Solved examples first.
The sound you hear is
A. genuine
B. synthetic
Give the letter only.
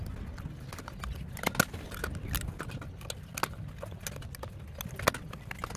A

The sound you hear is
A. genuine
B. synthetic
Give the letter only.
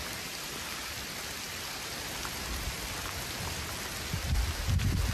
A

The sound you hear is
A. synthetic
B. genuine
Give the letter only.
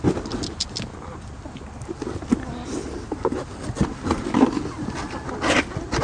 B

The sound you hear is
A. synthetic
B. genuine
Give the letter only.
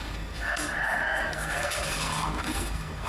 A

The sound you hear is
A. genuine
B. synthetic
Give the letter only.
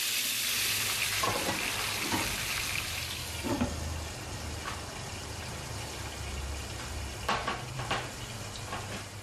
B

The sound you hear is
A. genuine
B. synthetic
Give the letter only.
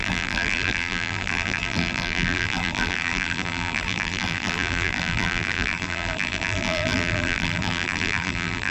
B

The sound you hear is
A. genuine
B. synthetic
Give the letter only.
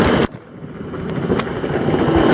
A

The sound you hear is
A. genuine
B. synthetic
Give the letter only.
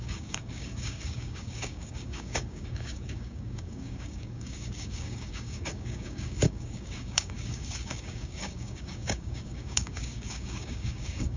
B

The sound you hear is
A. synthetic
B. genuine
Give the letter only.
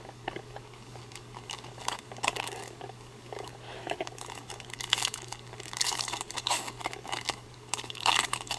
A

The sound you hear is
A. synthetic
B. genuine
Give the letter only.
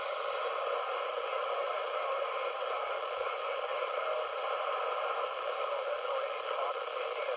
B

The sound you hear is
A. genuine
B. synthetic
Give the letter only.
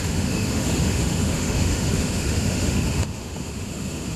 B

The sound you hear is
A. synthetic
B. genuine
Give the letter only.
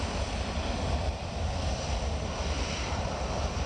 A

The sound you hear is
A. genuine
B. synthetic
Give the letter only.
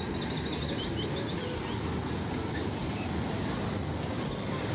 A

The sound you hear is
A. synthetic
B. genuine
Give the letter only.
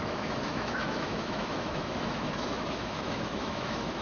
A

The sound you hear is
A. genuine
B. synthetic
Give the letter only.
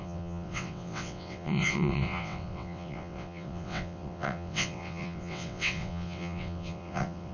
B